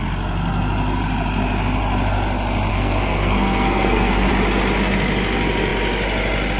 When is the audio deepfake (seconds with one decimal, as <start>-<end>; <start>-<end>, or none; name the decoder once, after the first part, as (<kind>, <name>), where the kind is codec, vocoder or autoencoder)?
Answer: 2.7-4.3 (codec, SNAC)